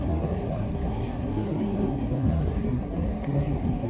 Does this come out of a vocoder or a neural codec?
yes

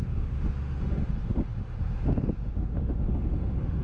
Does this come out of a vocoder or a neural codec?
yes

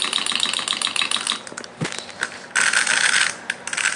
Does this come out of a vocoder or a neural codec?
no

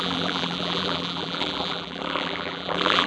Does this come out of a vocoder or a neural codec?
yes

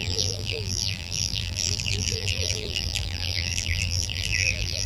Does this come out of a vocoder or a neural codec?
yes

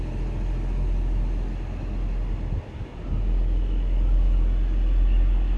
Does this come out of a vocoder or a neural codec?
no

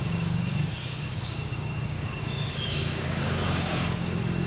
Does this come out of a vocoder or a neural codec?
yes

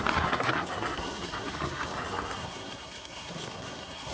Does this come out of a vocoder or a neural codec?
yes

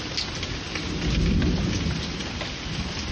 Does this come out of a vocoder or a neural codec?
no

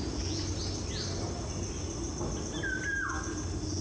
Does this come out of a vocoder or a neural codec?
no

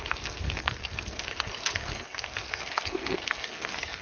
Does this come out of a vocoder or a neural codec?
yes